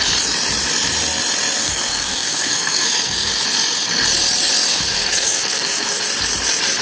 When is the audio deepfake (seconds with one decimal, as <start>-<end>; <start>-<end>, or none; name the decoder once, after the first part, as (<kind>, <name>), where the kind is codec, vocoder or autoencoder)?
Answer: 1.6-3.3 (codec, SNAC); 4.7-6.0

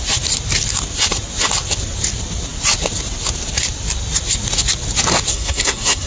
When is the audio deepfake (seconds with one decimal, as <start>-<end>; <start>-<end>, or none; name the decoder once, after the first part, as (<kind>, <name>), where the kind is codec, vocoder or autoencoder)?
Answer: 5.3-6.1 (codec, SNAC)

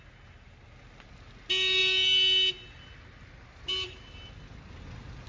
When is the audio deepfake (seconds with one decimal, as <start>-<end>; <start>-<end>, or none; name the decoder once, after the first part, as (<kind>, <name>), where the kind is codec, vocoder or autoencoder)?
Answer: none